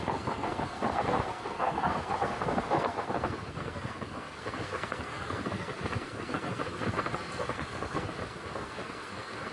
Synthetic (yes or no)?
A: yes